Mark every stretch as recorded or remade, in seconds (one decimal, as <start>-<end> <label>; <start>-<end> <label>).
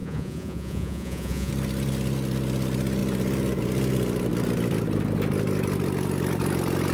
0.0-1.5 remade; 1.5-6.9 recorded